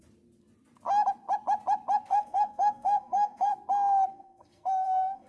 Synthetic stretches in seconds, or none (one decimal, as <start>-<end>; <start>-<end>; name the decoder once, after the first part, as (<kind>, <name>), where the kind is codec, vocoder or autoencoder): 2.1-3.5 (codec, SNAC); 4.1-5.3